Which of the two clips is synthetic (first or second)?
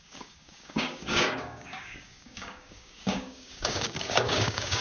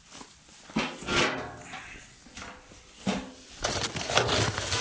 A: first